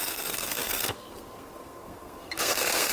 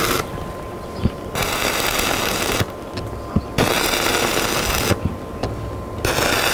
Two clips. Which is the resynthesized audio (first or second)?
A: first